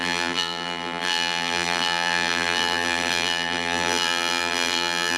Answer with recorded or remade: remade